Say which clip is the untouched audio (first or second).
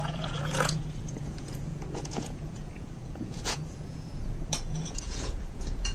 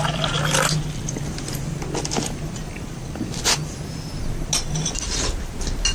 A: second